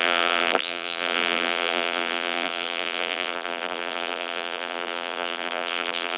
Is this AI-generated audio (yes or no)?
yes